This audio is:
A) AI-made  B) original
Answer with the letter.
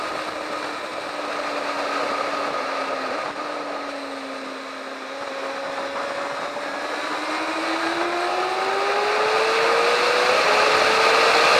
B